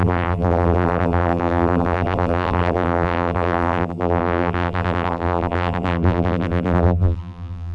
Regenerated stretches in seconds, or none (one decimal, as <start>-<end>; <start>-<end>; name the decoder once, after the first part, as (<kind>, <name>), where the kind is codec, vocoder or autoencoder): 0.0-7.7 (vocoder, BigVGAN v2)